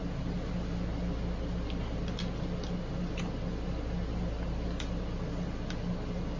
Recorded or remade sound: recorded